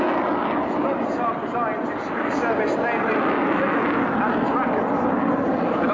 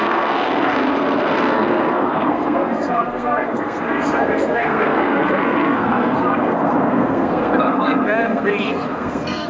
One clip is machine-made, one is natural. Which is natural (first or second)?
first